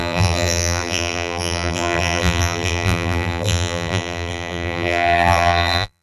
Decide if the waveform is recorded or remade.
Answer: remade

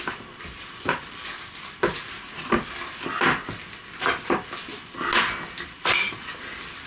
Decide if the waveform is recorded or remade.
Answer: recorded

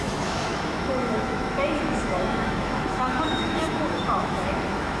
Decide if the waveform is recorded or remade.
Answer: remade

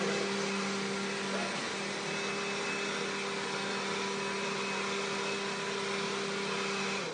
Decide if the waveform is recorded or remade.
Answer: recorded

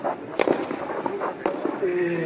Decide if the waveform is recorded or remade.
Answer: recorded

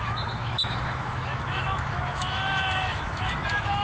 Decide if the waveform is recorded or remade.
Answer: remade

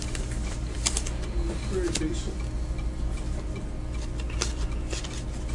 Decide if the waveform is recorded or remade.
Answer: recorded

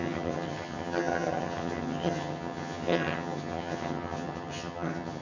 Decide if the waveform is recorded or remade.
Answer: remade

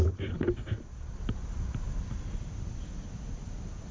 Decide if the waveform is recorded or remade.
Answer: recorded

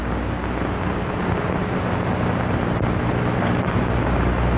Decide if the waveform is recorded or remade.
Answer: recorded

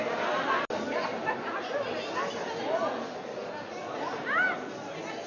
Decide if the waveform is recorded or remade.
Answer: recorded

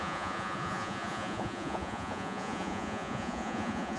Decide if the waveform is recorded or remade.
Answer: remade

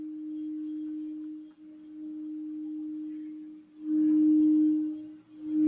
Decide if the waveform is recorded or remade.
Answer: recorded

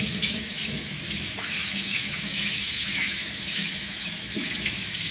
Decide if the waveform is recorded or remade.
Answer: remade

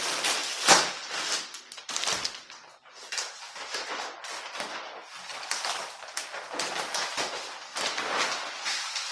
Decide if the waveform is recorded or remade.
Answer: recorded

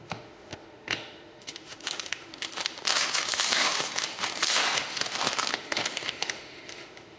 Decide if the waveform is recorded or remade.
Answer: remade